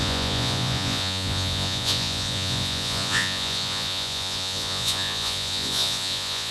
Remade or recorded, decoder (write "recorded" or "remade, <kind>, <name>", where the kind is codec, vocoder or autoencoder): remade, vocoder, Vocos